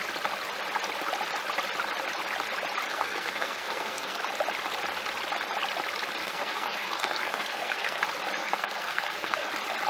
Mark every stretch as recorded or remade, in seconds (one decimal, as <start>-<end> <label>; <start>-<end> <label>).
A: 0.0-2.9 recorded; 2.9-4.2 remade; 4.2-6.2 recorded; 6.2-8.0 remade; 8.0-8.4 recorded; 8.4-9.5 remade; 9.5-9.9 recorded

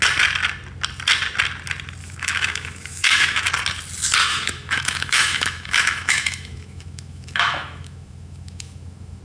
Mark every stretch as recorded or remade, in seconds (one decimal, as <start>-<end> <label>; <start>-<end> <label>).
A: 0.0-2.0 recorded; 2.0-3.5 remade; 3.5-4.3 recorded; 4.3-9.2 remade

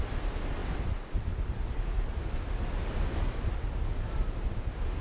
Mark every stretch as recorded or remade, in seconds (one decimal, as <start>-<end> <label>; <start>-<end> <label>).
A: 0.0-5.0 recorded